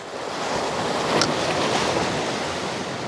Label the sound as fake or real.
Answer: real